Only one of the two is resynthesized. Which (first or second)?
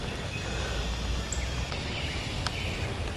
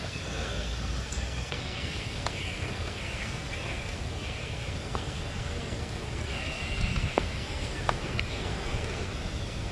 second